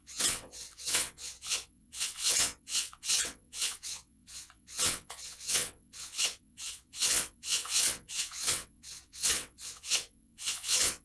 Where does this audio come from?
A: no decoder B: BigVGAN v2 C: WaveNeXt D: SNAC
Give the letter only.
C